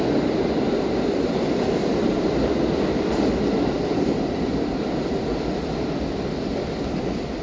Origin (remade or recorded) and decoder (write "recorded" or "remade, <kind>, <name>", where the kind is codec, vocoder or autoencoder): remade, vocoder, BigVGAN v2